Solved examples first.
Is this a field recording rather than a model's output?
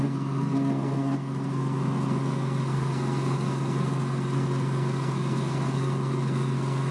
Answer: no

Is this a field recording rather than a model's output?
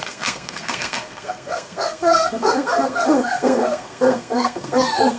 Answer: no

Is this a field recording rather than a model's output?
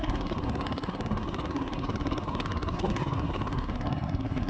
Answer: no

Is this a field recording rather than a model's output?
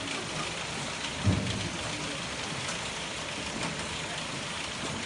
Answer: yes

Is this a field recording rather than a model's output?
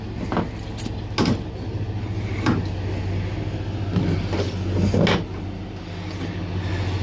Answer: yes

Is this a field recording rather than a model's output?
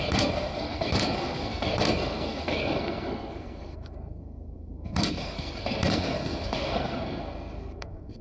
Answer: no